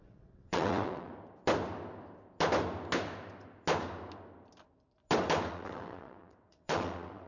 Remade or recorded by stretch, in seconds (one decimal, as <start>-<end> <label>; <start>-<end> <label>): 0.0-1.1 remade; 1.1-5.5 recorded; 5.5-7.3 remade